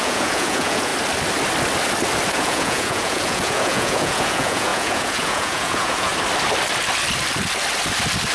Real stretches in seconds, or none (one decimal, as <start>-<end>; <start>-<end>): 0.9-2.3; 6.1-8.3